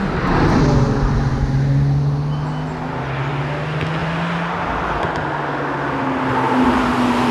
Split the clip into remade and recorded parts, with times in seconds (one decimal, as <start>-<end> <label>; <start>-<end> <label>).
0.0-4.0 recorded; 4.0-5.0 remade; 5.0-7.3 recorded